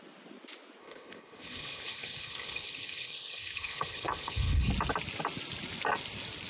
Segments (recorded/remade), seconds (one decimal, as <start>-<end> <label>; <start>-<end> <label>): 0.0-0.8 recorded; 0.8-4.7 remade; 4.7-6.5 recorded